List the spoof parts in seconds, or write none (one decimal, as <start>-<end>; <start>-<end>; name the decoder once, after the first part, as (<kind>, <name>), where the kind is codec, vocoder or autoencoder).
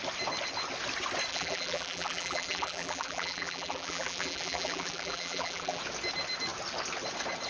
1.3-5.8 (vocoder, BigVGAN v2)